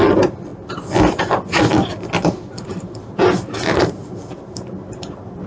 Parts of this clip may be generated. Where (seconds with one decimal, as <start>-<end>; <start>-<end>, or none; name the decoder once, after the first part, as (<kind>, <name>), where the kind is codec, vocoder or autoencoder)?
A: none